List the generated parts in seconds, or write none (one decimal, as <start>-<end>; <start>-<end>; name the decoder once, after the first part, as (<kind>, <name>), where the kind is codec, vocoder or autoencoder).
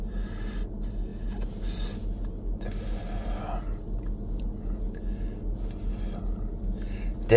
none